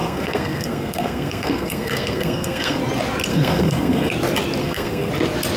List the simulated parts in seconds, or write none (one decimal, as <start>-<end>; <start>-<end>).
0.0-2.8; 3.3-4.1; 4.6-5.1

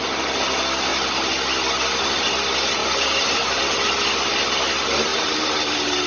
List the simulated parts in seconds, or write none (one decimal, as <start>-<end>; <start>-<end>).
2.8-3.6; 5.1-6.1

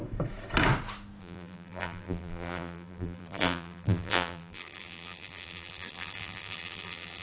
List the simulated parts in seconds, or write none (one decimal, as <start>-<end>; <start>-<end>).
1.2-7.2

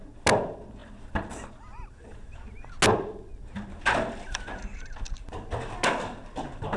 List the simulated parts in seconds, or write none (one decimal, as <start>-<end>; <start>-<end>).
none

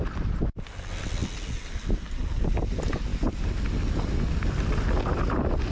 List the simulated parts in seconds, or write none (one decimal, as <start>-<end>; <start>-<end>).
none

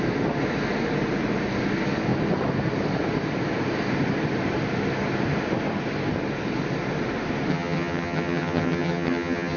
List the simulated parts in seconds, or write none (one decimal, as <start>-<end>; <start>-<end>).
7.5-9.6

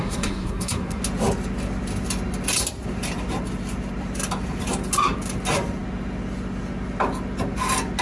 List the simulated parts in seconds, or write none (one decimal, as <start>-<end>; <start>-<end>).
0.0-1.0

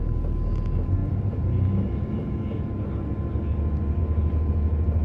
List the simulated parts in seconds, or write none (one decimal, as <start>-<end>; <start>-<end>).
none